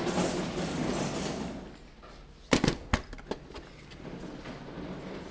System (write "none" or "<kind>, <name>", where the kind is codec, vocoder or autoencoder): none